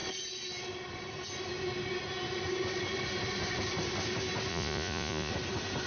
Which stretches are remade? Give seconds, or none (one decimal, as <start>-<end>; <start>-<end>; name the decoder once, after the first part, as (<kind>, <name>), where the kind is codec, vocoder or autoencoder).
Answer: 4.5-5.3 (vocoder, Vocos)